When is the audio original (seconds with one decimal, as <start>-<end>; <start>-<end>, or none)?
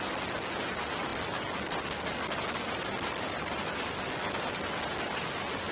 0.0-5.7